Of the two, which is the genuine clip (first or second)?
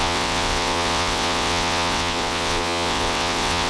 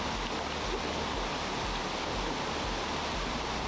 second